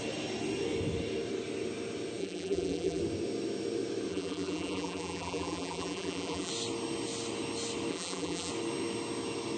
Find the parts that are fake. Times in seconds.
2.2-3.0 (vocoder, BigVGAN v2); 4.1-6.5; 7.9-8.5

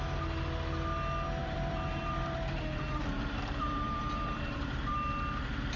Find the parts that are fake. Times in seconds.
1.4-4.9 (vocoder, BigVGAN v2)

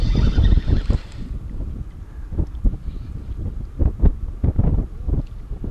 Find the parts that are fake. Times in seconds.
none

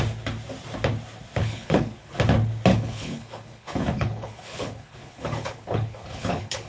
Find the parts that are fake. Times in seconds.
1.4-2.1 (codec, HILCodec); 2.7-6.7

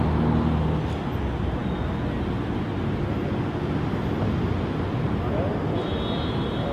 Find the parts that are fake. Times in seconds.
none

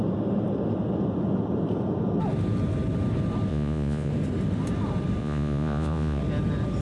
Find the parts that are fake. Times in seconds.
3.5-4.1 (vocoder, Vocos); 5.2-6.2

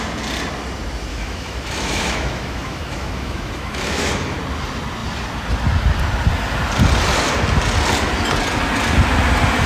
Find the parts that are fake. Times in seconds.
1.1-4.1 (autoencoder, DAC-VAE)

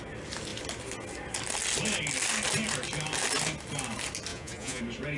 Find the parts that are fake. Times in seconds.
4.3-4.8 (vocoder, Vocos)